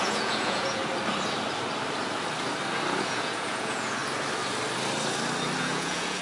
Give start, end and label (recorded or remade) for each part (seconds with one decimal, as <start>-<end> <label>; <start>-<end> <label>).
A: 0.0-0.8 remade; 0.8-3.0 recorded; 3.0-4.0 remade; 4.0-5.6 recorded; 5.6-6.2 remade